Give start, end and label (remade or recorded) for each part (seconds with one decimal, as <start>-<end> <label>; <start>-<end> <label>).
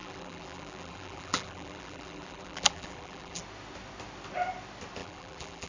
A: 0.0-3.4 remade; 3.4-5.0 recorded; 5.0-5.7 remade